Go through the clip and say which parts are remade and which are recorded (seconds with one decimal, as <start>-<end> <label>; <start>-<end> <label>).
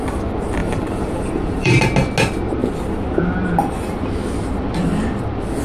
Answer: 0.0-0.6 recorded; 0.6-1.8 remade; 1.8-5.6 recorded